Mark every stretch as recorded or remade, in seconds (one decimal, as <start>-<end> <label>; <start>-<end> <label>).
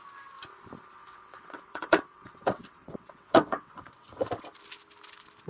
0.0-1.0 recorded; 1.0-4.3 remade; 4.3-5.5 recorded